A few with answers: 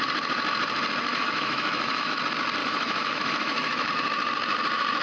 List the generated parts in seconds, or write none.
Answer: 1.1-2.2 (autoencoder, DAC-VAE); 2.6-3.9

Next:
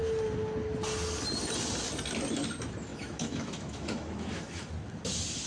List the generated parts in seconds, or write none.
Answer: 2.9-4.7 (autoencoder, DAC-VAE)

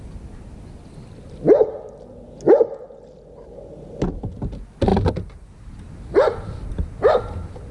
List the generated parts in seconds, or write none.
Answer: none

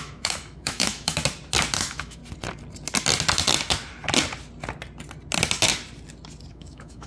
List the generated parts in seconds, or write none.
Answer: 0.0-1.2 (autoencoder, DAC-VAE); 1.8-2.2; 6.5-7.1

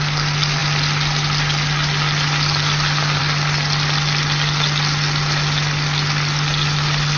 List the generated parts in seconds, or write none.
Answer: none

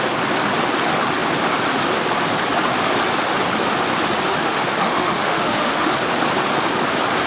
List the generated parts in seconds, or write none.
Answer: 4.3-5.9 (autoencoder, DAC-VAE)

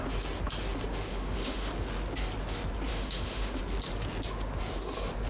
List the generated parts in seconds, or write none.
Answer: 1.1-1.7 (autoencoder, DAC-VAE); 2.9-3.6

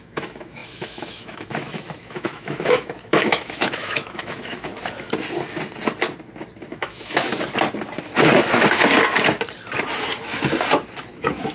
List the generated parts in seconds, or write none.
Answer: 0.0-4.7 (autoencoder, DAC-VAE); 6.7-7.3; 11.1-11.5